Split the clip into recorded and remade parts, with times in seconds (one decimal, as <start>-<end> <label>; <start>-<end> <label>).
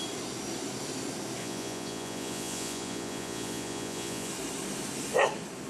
0.0-1.4 recorded; 1.4-4.3 remade; 4.3-5.7 recorded